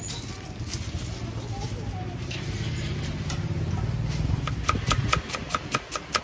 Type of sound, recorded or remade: recorded